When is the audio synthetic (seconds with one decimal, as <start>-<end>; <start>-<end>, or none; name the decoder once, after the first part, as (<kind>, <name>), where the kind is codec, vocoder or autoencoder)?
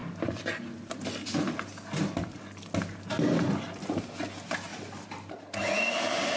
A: none